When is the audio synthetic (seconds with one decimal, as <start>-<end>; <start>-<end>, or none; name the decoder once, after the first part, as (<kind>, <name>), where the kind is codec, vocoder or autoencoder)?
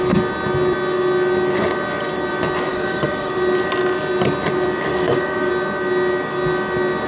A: 2.7-3.3 (codec, DAC); 4.9-5.5